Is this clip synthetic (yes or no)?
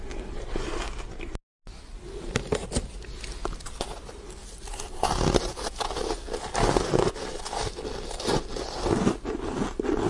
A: no